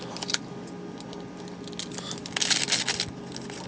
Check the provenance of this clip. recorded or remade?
recorded